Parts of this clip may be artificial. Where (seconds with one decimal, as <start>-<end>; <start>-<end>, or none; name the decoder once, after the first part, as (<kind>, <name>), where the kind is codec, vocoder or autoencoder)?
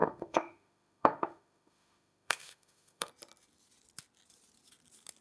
0.0-3.1 (autoencoder, DAC-VAE)